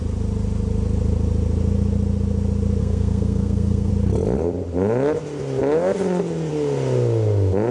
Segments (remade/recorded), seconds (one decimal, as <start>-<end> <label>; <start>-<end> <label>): 0.0-2.8 recorded; 2.8-3.9 remade; 3.9-7.7 recorded